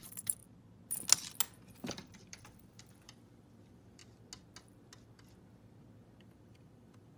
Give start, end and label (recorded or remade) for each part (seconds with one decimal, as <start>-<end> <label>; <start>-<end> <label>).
0.0-0.4 remade; 0.4-1.9 recorded; 1.9-4.0 remade; 4.0-6.2 recorded; 6.2-7.2 remade